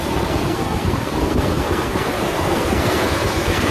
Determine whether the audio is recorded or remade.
remade